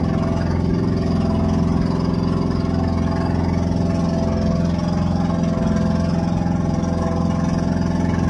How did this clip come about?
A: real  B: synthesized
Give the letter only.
A